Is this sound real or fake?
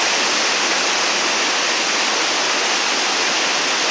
real